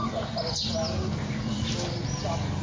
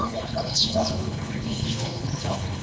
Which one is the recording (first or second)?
first